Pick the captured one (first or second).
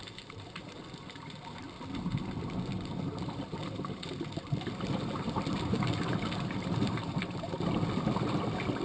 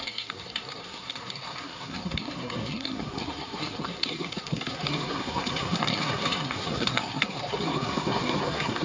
first